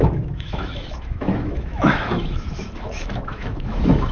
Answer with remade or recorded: remade